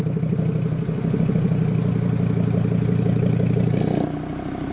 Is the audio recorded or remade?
recorded